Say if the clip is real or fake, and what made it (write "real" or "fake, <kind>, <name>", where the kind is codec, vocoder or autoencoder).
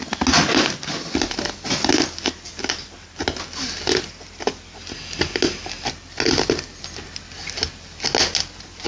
real